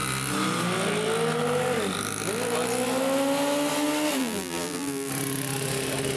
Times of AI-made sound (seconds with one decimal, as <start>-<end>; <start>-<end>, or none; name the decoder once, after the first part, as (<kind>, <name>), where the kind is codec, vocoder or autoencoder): 4.2-5.1 (vocoder, BigVGAN v2)